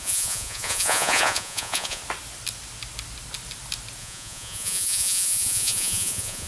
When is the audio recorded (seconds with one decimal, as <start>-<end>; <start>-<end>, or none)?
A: 2.0-4.0